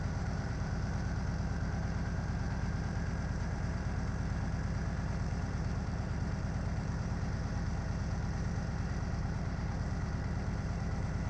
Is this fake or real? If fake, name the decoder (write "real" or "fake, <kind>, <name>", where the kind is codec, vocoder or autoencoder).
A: fake, vocoder, BigVGAN v2